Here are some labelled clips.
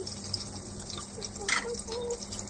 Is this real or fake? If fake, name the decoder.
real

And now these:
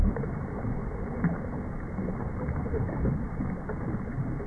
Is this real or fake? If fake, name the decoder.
real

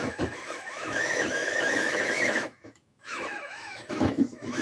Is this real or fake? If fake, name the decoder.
fake, autoencoder, DAC-VAE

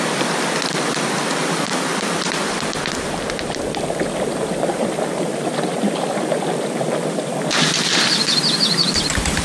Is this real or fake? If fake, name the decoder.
fake, vocoder, BigVGAN v2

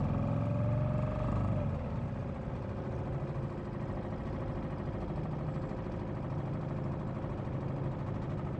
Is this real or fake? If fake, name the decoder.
real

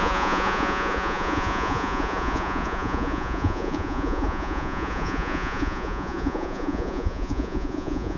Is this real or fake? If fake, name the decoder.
fake, vocoder, Vocos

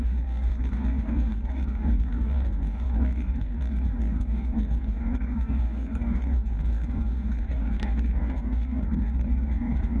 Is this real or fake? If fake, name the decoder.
fake, codec, DAC